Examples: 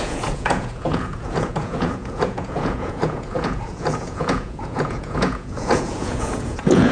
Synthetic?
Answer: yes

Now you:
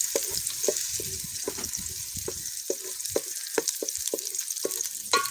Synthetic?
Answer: no